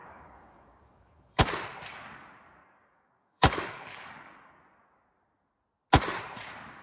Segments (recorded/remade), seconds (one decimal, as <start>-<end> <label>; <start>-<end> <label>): 0.0-1.4 remade; 1.4-2.6 recorded; 2.6-4.6 remade; 4.6-6.8 recorded